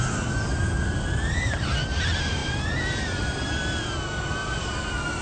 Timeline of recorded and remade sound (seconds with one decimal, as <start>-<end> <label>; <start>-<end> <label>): 0.0-2.4 recorded; 2.4-3.4 remade; 3.4-4.4 recorded; 4.4-5.2 remade